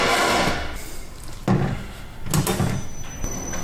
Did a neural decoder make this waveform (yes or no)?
no